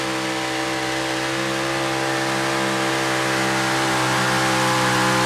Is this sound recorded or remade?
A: recorded